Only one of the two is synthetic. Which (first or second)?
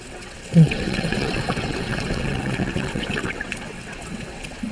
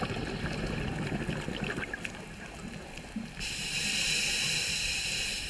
first